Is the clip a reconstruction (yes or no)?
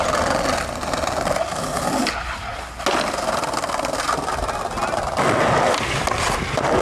no